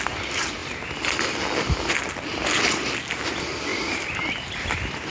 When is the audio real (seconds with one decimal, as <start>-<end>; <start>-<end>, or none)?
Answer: 0.0-5.1

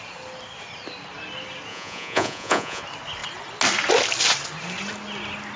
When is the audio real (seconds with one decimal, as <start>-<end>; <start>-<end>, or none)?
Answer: 0.0-1.7; 2.8-5.6

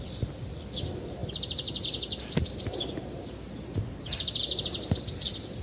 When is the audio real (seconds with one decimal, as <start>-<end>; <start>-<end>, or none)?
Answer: 0.0-5.6

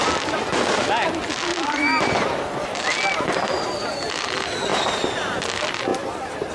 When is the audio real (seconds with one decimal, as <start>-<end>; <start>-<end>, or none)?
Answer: 0.0-1.5; 3.0-5.9

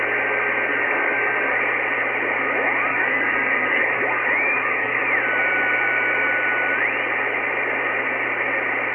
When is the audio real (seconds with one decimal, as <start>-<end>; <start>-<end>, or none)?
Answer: 0.0-0.7; 1.5-2.9; 5.0-8.9

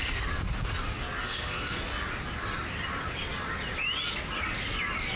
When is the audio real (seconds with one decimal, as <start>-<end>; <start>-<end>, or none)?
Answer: 0.0-1.2; 1.8-5.2